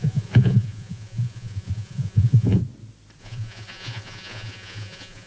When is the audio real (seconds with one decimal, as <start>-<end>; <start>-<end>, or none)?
2.6-3.2